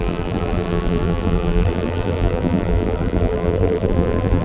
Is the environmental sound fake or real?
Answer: fake